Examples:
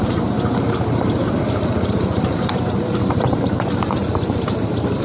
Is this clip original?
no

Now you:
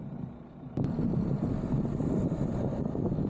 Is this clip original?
yes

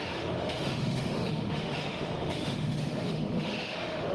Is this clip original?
no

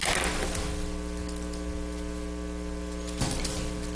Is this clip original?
yes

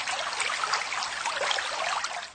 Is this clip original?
yes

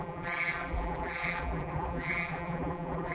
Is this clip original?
no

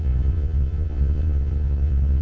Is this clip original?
no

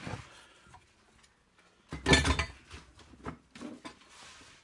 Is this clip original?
yes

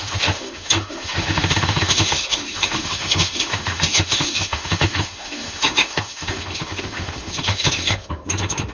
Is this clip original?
no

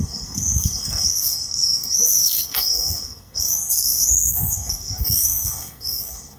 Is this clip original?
no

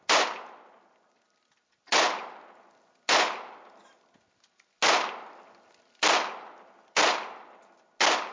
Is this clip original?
yes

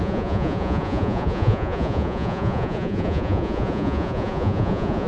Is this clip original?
no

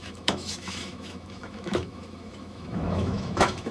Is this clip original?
no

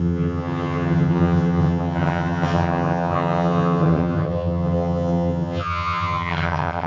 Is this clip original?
no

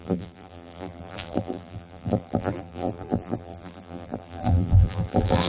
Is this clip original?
no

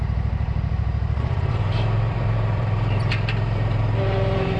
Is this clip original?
no